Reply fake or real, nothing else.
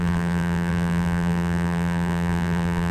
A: fake